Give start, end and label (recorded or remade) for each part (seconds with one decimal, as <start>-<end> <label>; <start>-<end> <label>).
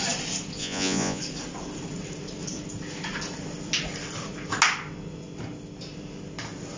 0.0-0.6 recorded; 0.6-1.2 remade; 1.2-6.8 recorded